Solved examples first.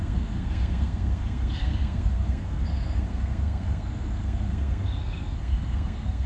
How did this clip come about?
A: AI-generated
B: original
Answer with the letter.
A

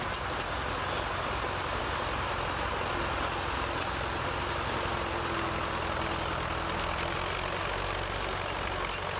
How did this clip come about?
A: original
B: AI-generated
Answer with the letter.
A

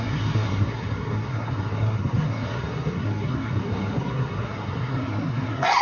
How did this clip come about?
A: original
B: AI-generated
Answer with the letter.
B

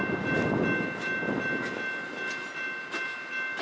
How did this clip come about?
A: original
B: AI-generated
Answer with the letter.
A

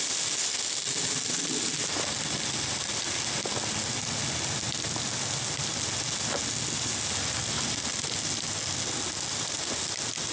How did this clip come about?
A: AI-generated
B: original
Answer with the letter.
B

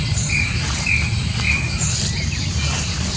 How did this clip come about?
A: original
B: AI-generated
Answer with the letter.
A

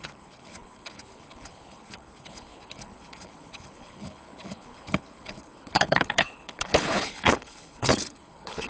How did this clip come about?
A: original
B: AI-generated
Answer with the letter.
B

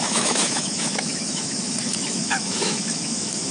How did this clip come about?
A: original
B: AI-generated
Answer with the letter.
B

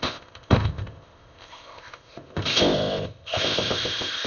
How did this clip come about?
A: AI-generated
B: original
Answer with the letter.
A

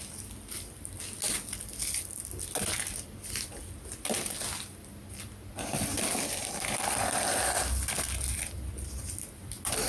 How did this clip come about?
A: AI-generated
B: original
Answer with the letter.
B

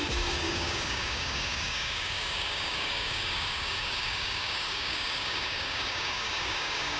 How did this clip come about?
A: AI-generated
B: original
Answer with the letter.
A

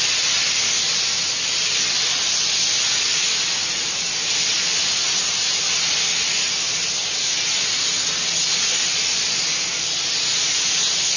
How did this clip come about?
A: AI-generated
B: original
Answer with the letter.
B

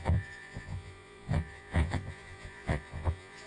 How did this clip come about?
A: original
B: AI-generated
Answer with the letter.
B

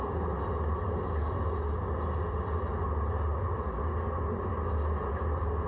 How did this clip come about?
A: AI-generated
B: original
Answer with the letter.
B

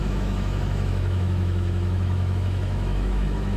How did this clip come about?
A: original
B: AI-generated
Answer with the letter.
B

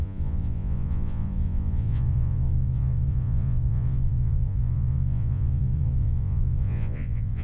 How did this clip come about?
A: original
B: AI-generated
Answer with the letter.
B